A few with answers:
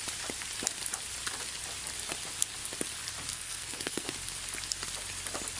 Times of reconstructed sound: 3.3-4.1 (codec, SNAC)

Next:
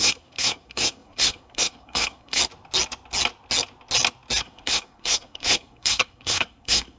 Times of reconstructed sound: 0.0-2.4 (codec, SNAC); 4.4-7.0

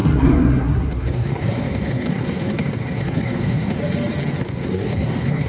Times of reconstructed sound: 0.0-3.8 (codec, SNAC); 4.4-5.5

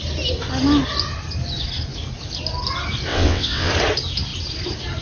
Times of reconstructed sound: 3.1-3.7 (vocoder, WaveNeXt)

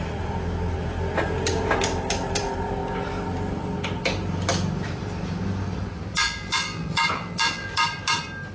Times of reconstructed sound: 6.2-7.7 (vocoder, BigVGAN v2)

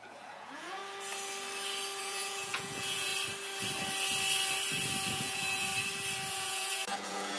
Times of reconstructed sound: 0.0-0.8 (vocoder, Vocos); 2.0-3.1; 5.1-5.7; 6.3-7.4

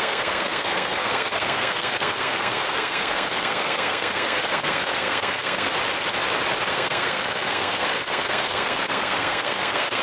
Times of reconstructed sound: 0.0-5.7 (codec, SNAC); 6.7-10.0